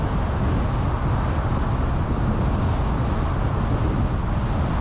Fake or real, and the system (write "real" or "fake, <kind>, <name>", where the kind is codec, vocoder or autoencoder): real